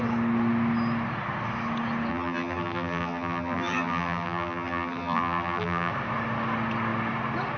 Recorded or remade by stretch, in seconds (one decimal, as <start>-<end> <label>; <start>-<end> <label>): 0.0-2.1 recorded; 2.1-5.9 remade; 5.9-7.6 recorded